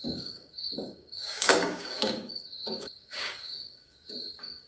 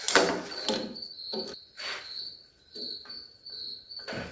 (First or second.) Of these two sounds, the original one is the second